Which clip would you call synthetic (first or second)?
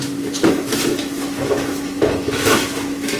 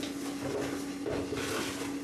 first